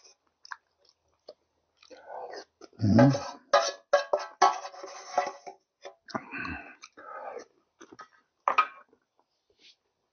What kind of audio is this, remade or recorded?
recorded